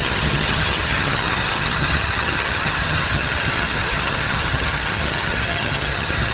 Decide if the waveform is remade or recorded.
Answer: remade